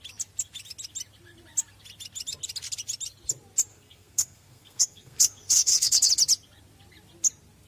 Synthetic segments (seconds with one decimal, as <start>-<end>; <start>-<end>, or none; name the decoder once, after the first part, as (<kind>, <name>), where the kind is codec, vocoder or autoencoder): 3.7-6.1 (codec, SNAC)